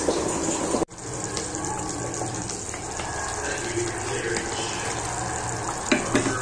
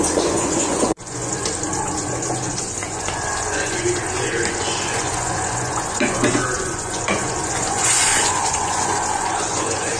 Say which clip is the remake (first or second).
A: second